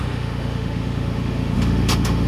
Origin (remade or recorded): remade